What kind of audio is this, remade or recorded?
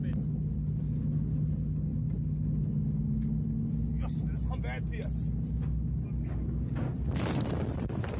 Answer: recorded